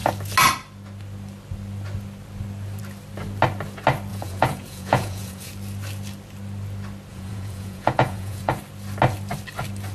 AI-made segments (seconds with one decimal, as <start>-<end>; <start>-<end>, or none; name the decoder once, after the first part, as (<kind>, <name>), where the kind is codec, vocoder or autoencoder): 4.1-5.5 (vocoder, Vocos); 7.1-8.6